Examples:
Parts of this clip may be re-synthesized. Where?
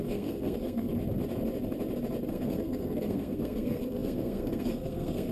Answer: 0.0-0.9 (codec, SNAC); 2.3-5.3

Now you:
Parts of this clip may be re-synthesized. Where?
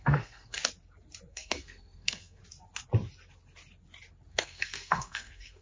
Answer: 0.0-0.6 (codec, SNAC); 1.3-2.4; 4.3-5.6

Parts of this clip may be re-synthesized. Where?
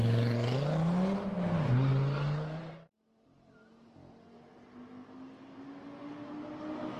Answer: none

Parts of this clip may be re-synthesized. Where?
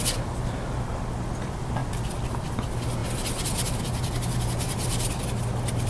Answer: none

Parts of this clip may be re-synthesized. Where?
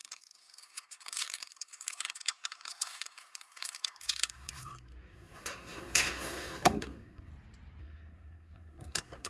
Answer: 0.0-7.3 (codec, SNAC); 7.8-9.3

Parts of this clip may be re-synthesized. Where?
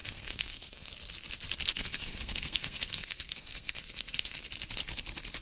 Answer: 0.0-0.9 (codec, SNAC); 1.7-4.5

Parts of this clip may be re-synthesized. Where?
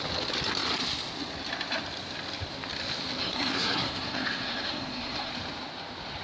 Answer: 3.2-5.3 (codec, SNAC)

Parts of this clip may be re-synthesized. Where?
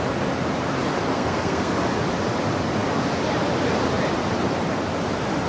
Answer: 1.1-1.7 (codec, SNAC)